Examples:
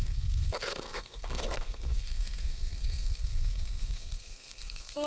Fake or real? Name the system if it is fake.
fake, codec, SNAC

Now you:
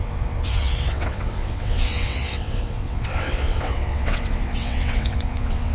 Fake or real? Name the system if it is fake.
fake, vocoder, WaveNeXt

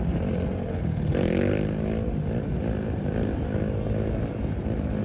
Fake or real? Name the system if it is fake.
real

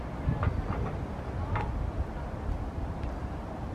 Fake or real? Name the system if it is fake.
real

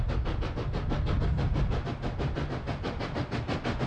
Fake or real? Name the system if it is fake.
real